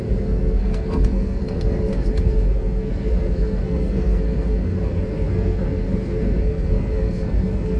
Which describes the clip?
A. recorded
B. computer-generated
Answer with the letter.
B